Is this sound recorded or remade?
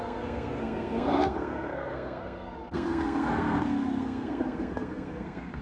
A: remade